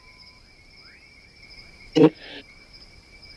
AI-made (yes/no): no